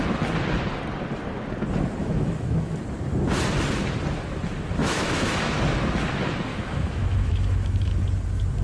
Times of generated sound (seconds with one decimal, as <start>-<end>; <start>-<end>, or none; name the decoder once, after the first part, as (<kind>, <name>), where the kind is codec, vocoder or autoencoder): 2.0-2.8 (autoencoder, DAC-VAE); 4.8-5.6; 6.5-8.0